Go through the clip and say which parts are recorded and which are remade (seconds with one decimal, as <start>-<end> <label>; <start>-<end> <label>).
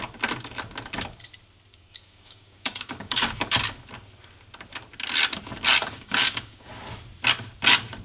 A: 0.0-1.7 recorded; 1.7-3.4 remade; 3.4-5.8 recorded; 5.8-6.7 remade; 6.7-8.0 recorded